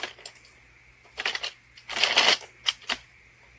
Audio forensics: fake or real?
real